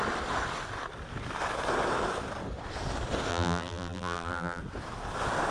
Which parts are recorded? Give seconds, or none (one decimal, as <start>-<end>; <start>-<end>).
0.0-3.3; 4.6-5.5